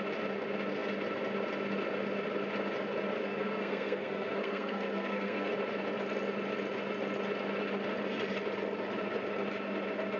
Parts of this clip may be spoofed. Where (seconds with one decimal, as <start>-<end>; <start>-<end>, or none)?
3.2-5.5